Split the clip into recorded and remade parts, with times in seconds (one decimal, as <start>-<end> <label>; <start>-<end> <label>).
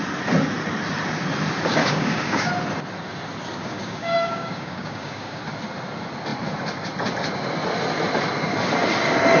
0.0-1.8 recorded; 1.8-2.5 remade; 2.5-3.6 recorded; 3.6-5.4 remade; 5.4-9.4 recorded